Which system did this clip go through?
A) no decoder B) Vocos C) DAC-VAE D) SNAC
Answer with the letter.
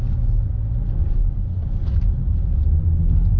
A